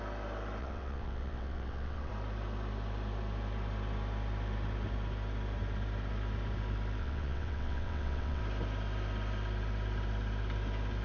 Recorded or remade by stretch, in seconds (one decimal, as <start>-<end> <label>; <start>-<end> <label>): 0.0-0.6 recorded; 0.6-2.1 remade; 2.1-7.0 recorded; 7.0-8.4 remade; 8.4-11.0 recorded

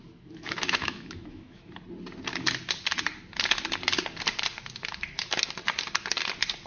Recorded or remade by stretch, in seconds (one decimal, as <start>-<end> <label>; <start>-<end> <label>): 0.0-1.7 remade; 1.7-6.7 recorded

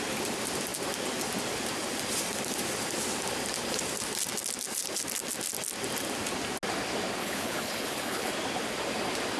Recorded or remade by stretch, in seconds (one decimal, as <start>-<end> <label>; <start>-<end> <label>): 0.0-7.2 recorded; 7.2-8.3 remade; 8.3-9.4 recorded

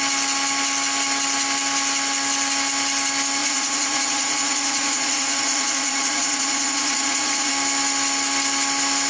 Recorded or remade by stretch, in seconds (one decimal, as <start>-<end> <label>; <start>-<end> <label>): 0.0-3.4 recorded; 3.4-7.5 remade; 7.5-9.1 recorded

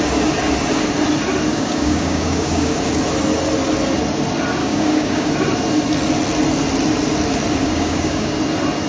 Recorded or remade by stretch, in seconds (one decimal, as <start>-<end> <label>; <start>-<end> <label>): 0.0-1.5 recorded; 1.5-2.7 remade; 2.7-4.6 recorded; 4.6-5.3 remade; 5.3-7.6 recorded; 7.6-8.4 remade; 8.4-8.9 recorded

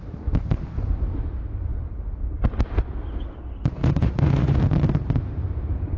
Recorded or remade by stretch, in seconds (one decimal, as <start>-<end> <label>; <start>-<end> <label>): 0.0-3.8 recorded; 3.8-4.6 remade; 4.6-6.0 recorded